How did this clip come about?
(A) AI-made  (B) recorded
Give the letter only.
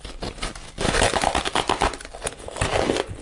B